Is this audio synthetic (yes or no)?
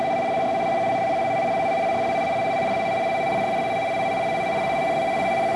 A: no